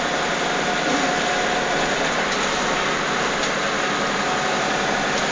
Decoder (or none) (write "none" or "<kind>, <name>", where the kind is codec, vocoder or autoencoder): none